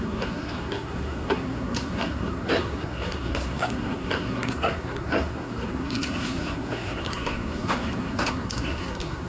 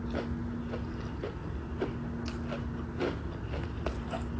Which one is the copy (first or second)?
first